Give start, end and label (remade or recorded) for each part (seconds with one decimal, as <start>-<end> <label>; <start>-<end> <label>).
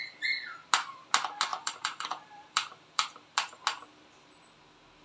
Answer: 0.0-1.5 recorded; 1.5-3.6 remade; 3.6-5.0 recorded